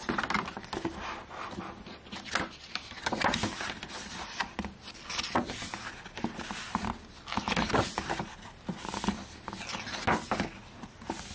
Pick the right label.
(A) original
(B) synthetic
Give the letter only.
A